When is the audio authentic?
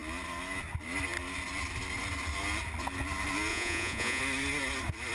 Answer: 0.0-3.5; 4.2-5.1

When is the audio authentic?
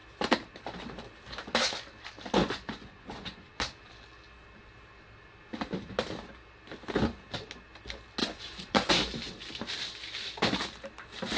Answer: 0.0-2.4; 3.6-8.2; 8.9-11.4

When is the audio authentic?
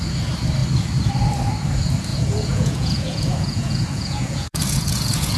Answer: 0.0-2.1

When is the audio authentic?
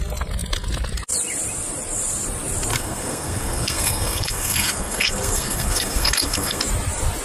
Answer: 0.0-2.7; 6.6-7.2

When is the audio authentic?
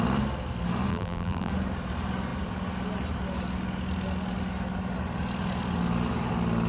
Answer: 0.0-0.9; 1.5-6.7